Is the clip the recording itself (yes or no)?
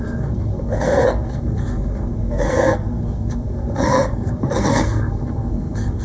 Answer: no